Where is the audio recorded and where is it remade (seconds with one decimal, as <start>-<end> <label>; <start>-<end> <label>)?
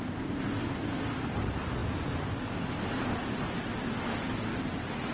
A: 0.0-5.1 recorded